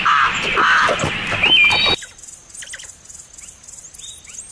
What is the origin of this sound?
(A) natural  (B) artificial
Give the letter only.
A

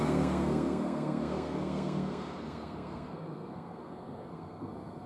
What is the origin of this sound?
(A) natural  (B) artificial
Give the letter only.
B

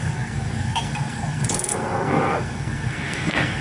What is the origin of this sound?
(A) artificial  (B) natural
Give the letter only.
A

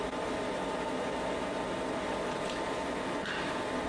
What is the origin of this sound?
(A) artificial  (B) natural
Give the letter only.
B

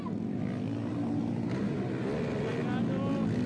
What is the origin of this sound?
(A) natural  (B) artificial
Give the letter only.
A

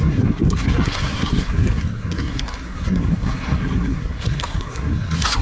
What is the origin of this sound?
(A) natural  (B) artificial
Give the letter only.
B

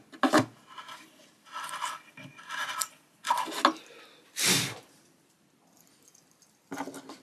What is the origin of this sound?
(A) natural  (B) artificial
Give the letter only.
A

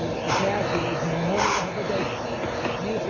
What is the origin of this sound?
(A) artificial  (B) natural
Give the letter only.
B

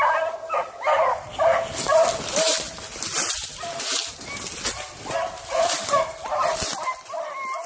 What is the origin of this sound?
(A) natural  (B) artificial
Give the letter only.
A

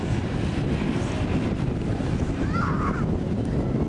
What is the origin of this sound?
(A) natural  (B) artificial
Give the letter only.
A